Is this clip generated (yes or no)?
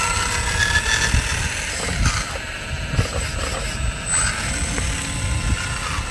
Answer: no